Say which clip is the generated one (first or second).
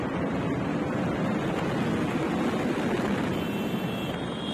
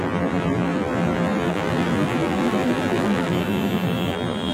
second